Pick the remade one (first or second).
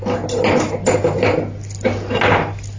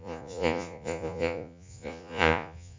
second